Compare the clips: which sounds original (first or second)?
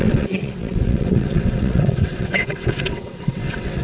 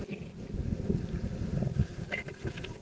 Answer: second